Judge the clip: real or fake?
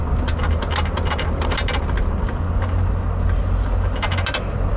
real